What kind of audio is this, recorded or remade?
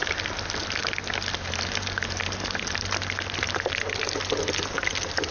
recorded